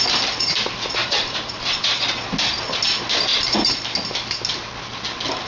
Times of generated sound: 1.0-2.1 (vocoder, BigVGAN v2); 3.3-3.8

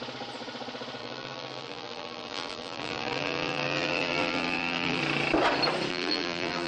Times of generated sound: 1.0-5.0 (vocoder, BigVGAN v2); 5.9-6.7

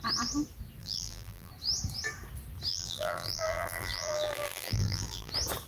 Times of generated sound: 0.8-1.5 (vocoder, BigVGAN v2); 2.7-5.3

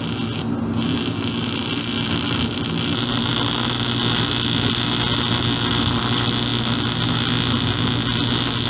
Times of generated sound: none

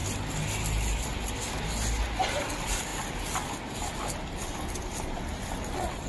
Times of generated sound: 2.4-2.9 (vocoder, BigVGAN v2)

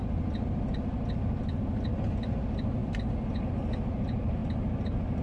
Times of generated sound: none